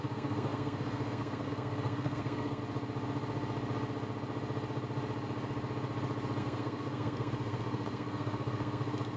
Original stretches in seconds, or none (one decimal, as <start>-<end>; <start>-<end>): 2.6-6.4